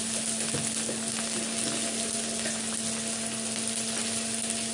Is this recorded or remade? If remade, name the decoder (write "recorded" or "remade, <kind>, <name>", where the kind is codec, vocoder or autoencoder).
recorded